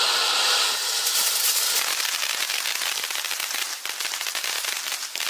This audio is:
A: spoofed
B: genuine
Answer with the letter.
B